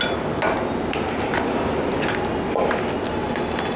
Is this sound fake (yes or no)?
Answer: no